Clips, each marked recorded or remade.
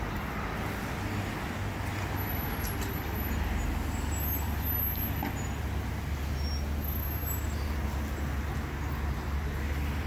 recorded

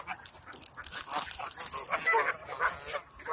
recorded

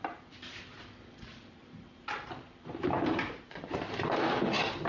remade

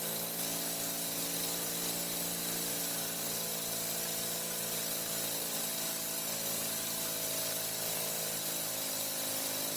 recorded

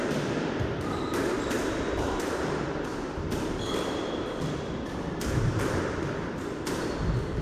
remade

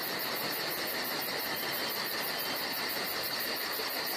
recorded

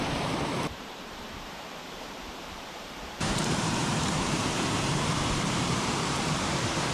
remade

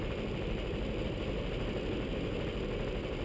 recorded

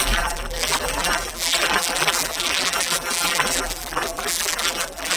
remade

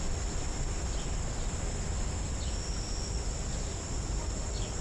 recorded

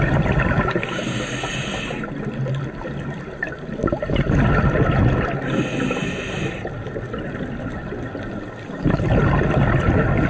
recorded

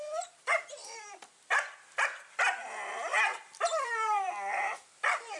remade